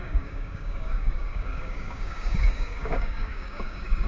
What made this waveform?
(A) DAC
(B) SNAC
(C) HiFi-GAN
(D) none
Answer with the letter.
A